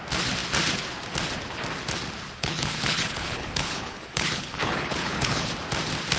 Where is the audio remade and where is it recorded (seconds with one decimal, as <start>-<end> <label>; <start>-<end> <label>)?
0.0-2.4 recorded; 2.4-5.5 remade; 5.5-6.2 recorded